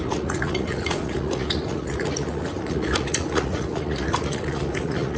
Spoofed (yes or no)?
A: yes